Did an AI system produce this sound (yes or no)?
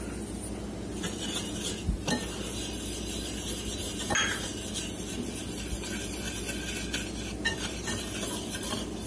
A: no